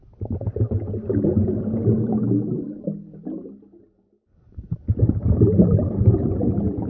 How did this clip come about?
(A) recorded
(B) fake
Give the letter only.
A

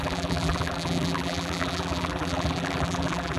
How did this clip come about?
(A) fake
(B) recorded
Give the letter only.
A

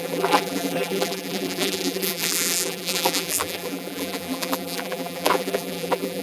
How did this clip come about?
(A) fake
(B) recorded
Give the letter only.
A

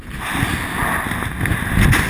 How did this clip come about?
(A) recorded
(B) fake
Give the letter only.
A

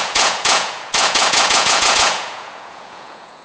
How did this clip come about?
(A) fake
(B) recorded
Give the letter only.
A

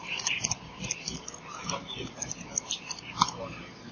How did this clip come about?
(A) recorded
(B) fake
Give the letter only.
A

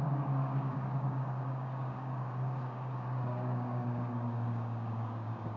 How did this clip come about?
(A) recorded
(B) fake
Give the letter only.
B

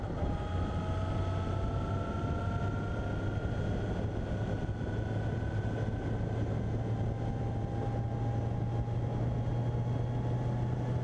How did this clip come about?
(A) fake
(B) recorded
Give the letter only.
B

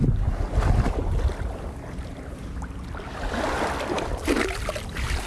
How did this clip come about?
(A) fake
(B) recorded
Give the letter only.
B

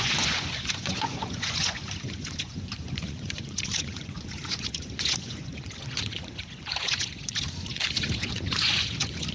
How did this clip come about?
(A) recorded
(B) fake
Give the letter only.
B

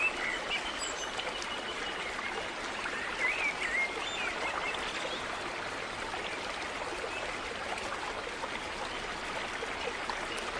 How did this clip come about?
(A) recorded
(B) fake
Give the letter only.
A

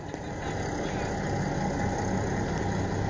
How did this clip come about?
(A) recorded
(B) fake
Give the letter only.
A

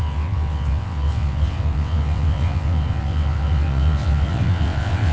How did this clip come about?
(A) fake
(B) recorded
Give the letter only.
A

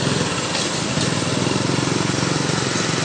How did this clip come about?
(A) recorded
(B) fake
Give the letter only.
A